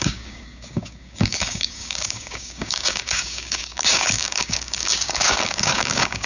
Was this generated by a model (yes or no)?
yes